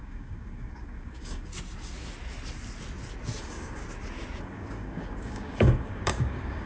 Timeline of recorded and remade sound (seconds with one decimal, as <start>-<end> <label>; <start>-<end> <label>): 0.0-1.5 remade; 1.5-3.4 recorded; 3.4-3.8 remade; 3.8-4.4 recorded; 4.4-6.7 remade

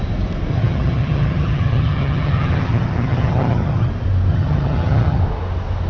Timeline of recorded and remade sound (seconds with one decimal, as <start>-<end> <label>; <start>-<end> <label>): 0.0-0.5 recorded; 0.5-3.9 remade; 3.9-4.3 recorded; 4.3-5.2 remade; 5.2-5.9 recorded

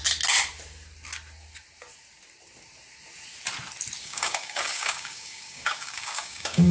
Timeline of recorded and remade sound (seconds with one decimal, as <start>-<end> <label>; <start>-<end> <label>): 0.0-4.0 recorded; 4.0-6.7 remade

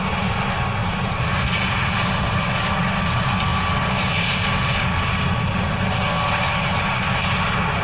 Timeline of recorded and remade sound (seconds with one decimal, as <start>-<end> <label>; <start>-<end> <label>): 0.0-0.8 recorded; 0.8-1.3 remade; 1.3-2.0 recorded; 2.0-2.6 remade; 2.6-7.8 recorded

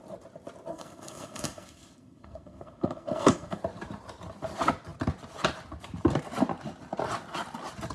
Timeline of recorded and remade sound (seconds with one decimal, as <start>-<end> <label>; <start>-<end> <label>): 0.0-0.7 recorded; 0.7-3.6 remade; 3.6-7.9 recorded

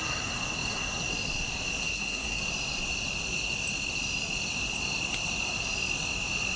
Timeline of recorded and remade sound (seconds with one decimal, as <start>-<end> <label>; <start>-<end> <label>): 0.0-1.8 recorded; 1.8-2.4 remade; 2.4-6.6 recorded